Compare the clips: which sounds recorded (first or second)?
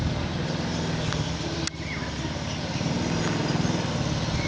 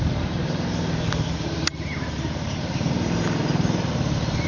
first